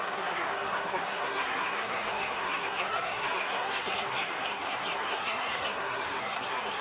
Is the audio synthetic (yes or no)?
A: yes